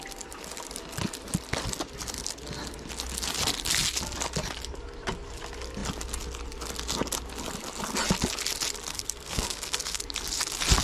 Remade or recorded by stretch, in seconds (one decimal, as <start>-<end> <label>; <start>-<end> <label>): 0.0-8.9 recorded; 8.9-10.0 remade; 10.0-10.8 recorded